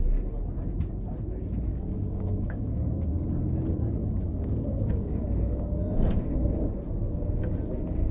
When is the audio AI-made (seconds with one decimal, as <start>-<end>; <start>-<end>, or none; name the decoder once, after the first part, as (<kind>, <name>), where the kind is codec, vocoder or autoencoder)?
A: 1.7-3.1 (codec, DAC); 4.0-5.2